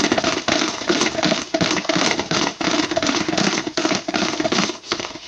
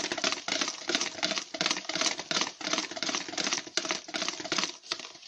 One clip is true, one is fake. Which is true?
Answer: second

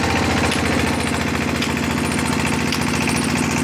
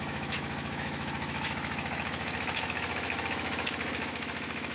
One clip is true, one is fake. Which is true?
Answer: first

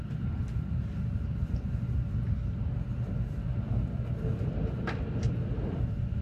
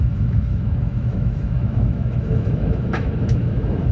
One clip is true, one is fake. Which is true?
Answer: first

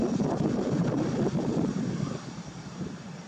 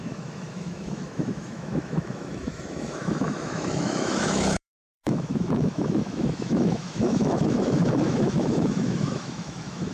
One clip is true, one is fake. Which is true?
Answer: first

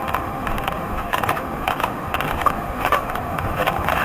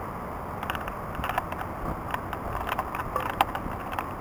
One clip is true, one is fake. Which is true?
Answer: second